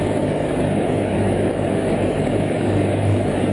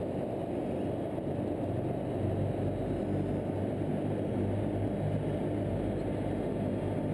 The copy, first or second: first